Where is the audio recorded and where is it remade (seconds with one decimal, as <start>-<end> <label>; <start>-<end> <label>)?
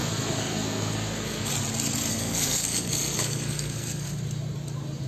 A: 0.0-1.5 remade; 1.5-2.1 recorded; 2.1-4.1 remade; 4.1-5.1 recorded